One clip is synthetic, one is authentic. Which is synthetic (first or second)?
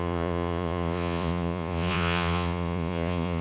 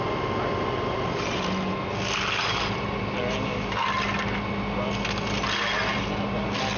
first